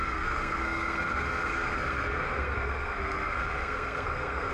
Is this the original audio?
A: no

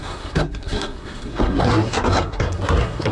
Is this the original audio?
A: no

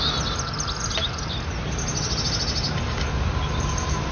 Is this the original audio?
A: yes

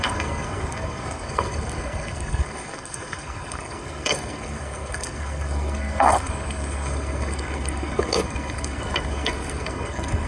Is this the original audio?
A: no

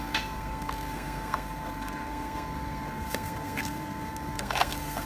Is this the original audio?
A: no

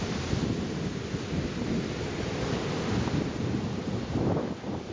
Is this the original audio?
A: yes